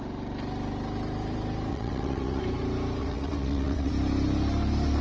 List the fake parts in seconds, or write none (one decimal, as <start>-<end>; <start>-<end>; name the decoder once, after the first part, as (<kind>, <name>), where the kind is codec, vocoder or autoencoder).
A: 1.7-2.4 (vocoder, WaveNeXt); 3.0-3.9